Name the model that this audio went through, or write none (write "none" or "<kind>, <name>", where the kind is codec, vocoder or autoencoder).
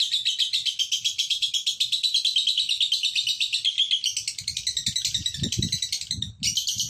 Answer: none